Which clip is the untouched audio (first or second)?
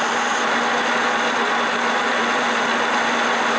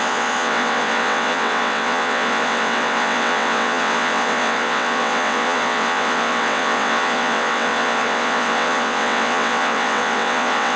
first